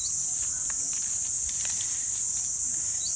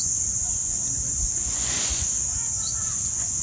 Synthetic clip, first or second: second